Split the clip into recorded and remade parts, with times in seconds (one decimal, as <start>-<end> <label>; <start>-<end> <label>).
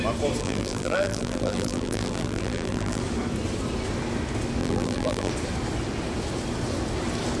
0.0-0.4 recorded; 0.4-3.0 remade; 3.0-4.6 recorded; 4.6-5.3 remade; 5.3-7.4 recorded